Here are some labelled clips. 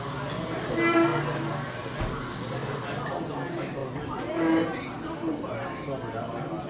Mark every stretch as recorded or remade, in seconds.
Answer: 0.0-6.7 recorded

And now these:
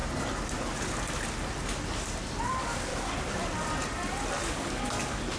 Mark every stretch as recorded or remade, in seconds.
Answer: 0.0-2.5 recorded; 2.5-2.9 remade; 2.9-4.4 recorded; 4.4-5.4 remade

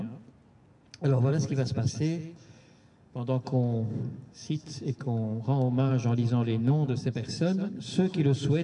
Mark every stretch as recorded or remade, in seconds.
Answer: 0.0-1.3 recorded; 1.3-5.9 remade; 5.9-6.6 recorded; 6.6-7.8 remade; 7.8-8.6 recorded

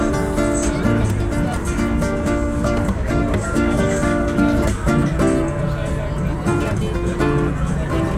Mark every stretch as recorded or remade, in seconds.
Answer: 0.0-1.6 recorded; 1.6-4.9 remade; 4.9-8.2 recorded